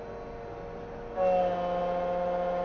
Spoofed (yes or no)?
no